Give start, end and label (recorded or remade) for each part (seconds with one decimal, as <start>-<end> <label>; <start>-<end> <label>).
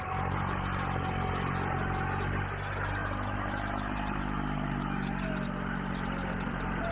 0.0-6.9 recorded